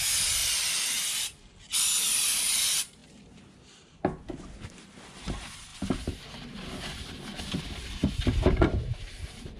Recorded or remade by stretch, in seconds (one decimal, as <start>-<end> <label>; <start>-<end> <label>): 0.0-0.4 remade; 0.4-1.8 recorded; 1.8-3.0 remade; 3.0-4.4 recorded; 4.4-9.6 remade